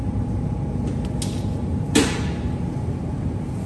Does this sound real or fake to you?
real